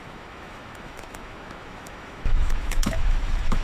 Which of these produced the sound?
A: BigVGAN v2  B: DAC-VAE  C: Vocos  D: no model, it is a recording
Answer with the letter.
B